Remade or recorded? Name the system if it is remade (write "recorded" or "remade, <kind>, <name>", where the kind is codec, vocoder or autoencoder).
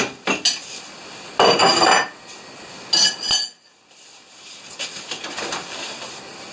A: recorded